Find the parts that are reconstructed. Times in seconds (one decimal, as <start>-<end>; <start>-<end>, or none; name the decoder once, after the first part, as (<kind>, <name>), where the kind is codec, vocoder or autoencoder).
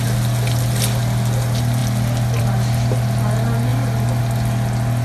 none